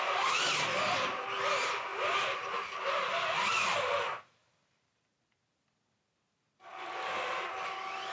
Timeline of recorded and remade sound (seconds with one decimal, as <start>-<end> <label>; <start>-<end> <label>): 0.0-1.9 recorded; 1.9-2.5 remade; 2.5-8.1 recorded